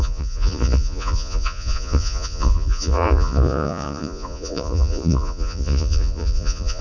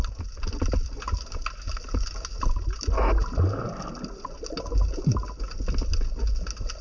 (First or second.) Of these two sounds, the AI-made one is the first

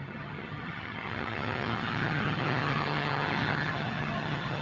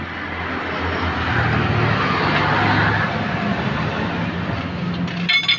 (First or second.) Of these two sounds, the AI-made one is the first